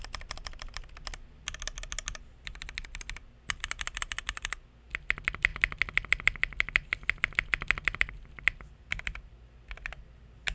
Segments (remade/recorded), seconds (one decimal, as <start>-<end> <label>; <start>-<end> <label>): 0.0-10.5 recorded